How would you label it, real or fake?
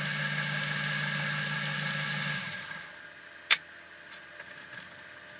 real